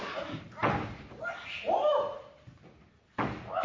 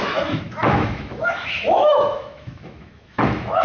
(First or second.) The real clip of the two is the first